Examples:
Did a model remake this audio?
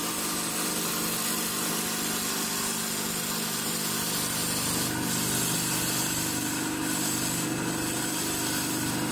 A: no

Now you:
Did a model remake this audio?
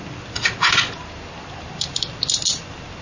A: no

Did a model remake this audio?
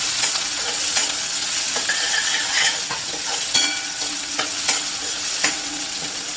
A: yes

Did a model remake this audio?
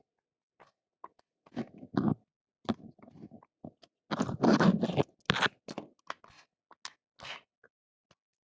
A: no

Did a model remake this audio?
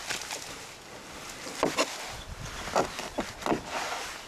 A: no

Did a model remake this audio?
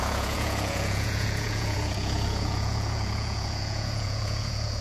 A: yes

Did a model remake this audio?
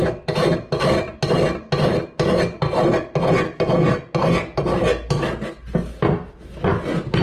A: no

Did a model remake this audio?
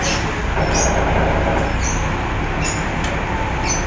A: no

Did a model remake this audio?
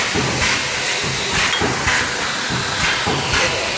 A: yes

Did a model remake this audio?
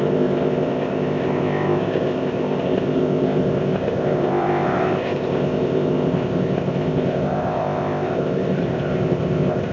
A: yes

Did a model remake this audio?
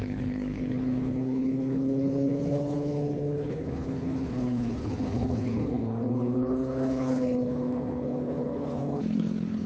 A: yes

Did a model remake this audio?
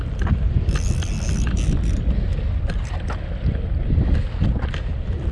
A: no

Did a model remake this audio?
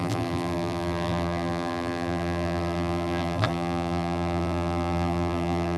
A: yes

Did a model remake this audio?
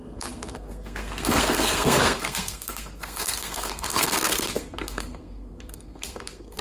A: yes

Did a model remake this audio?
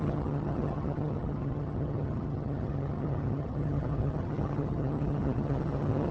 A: yes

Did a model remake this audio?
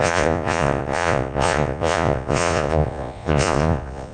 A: yes